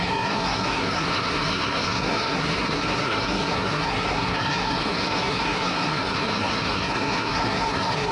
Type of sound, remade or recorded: remade